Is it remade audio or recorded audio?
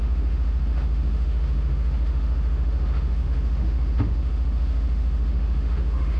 remade